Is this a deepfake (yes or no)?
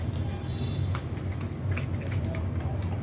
no